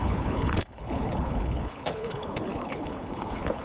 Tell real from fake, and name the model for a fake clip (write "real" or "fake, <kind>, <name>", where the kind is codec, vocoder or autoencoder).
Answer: fake, codec, HILCodec